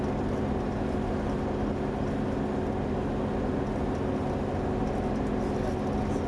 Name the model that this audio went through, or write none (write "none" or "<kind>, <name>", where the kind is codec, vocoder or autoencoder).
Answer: none